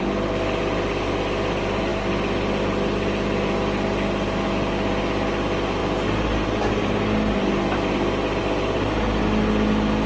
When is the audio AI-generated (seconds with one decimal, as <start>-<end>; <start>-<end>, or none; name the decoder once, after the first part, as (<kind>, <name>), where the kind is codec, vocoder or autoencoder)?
none